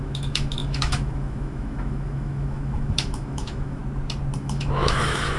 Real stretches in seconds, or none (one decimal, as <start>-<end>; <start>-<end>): 3.8-4.4